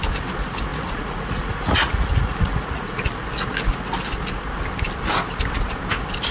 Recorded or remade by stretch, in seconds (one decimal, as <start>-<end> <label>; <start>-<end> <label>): 0.0-0.7 recorded; 0.7-3.0 remade; 3.0-6.3 recorded